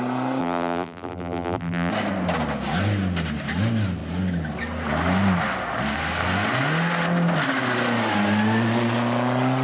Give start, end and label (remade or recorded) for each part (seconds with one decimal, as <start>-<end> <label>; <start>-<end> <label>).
0.0-0.4 recorded; 0.4-1.9 remade; 1.9-9.6 recorded